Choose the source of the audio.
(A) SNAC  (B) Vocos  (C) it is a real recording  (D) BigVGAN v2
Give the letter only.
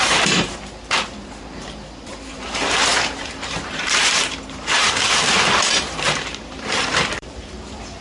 D